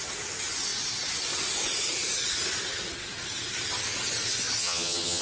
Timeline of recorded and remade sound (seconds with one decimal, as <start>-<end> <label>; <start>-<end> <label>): 0.0-4.6 recorded; 4.6-5.2 remade